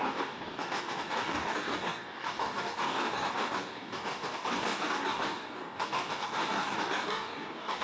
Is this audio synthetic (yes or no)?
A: yes